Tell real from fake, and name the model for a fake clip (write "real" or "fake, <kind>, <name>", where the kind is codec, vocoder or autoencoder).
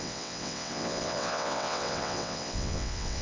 fake, vocoder, WaveNeXt